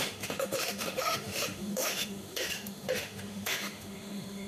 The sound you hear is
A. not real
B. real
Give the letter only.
A